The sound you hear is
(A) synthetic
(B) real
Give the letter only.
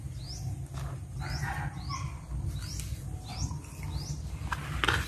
B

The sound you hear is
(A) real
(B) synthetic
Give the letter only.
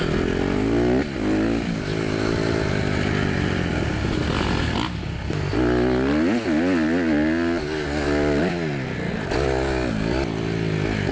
A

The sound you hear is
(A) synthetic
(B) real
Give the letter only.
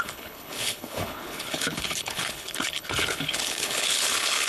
A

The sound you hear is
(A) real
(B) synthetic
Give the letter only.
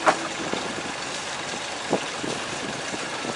A